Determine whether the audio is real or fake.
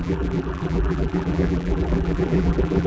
fake